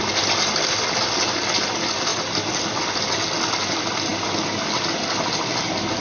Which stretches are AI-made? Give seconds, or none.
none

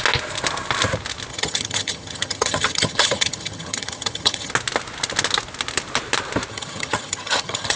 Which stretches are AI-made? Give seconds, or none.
1.3-4.5; 6.5-7.8

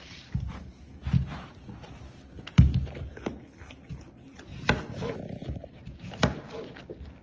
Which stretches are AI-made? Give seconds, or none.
none